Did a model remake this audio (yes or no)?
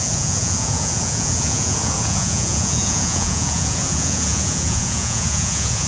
yes